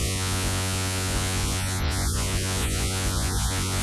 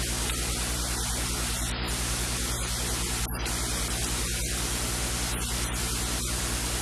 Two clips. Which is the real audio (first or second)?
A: second